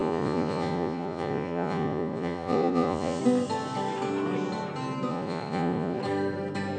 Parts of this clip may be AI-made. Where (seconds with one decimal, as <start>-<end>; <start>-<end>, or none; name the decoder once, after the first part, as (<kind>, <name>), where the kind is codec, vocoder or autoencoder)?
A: 0.0-3.2 (vocoder, Vocos); 5.1-6.0